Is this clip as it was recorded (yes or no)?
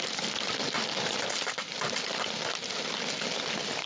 yes